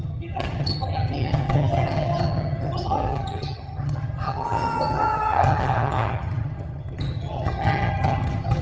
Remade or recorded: remade